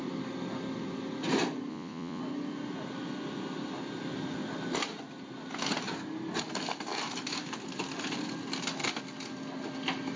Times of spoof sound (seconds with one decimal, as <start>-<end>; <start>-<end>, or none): 1.7-2.2